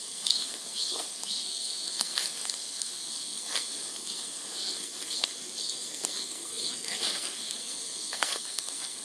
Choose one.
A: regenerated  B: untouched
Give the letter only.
A